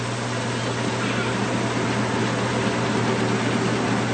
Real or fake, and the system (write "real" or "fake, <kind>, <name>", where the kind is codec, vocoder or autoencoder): real